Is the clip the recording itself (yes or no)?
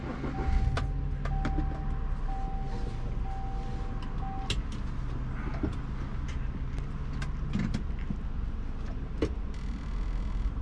yes